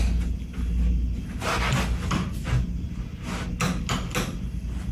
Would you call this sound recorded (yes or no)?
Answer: yes